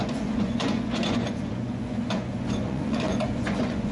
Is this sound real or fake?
fake